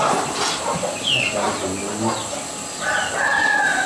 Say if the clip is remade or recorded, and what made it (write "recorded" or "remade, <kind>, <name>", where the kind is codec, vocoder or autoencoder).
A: recorded